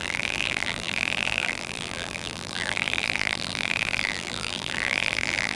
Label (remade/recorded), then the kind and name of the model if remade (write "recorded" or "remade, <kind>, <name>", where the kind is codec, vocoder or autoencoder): remade, vocoder, BigVGAN v2